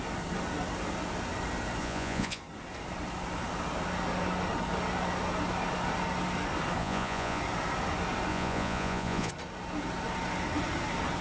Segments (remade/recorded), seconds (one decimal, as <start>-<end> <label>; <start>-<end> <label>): 0.0-1.8 recorded; 1.8-2.4 remade; 2.4-6.8 recorded; 6.8-7.4 remade; 7.4-8.3 recorded; 8.3-9.3 remade; 9.3-11.2 recorded